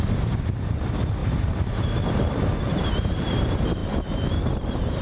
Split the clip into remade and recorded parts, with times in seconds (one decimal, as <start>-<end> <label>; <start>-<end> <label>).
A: 0.0-3.8 remade; 3.8-4.5 recorded; 4.5-5.0 remade